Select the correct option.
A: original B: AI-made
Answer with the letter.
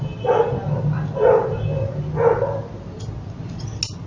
A